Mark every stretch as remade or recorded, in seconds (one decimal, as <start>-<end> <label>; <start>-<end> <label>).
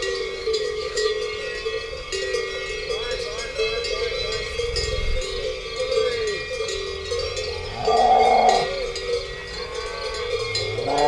0.0-0.4 recorded; 0.4-1.1 remade; 1.1-11.1 recorded